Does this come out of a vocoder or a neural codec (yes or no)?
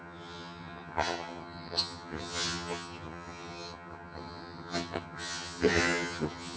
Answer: yes